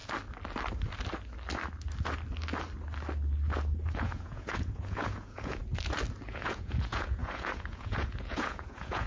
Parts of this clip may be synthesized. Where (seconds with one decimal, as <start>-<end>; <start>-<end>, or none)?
3.9-5.6; 6.3-9.1